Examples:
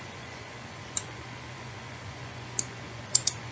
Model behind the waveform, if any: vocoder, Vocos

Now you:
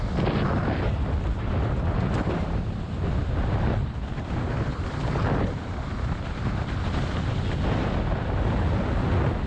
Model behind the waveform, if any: none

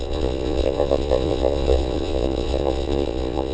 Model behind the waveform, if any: vocoder, Vocos